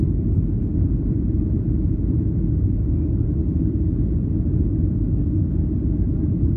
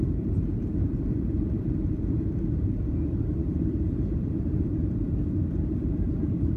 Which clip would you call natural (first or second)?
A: first